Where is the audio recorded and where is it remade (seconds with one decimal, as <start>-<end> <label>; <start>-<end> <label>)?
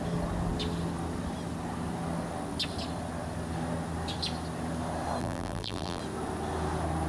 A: 0.0-5.2 recorded; 5.2-6.0 remade; 6.0-7.1 recorded